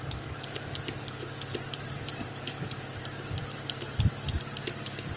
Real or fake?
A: fake